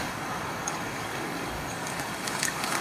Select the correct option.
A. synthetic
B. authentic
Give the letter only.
A